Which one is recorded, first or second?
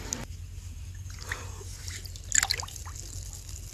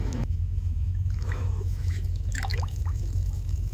first